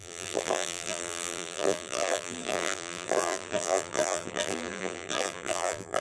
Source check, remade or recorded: remade